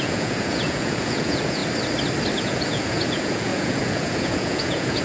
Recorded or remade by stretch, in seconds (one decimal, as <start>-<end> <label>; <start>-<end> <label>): 0.0-1.6 remade; 1.6-2.4 recorded; 2.4-5.0 remade